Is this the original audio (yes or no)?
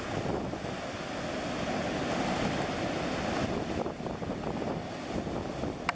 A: yes